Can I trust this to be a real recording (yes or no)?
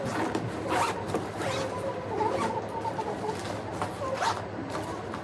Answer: yes